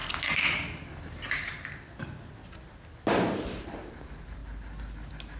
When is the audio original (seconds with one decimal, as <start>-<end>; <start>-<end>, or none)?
0.0-3.2; 4.4-5.4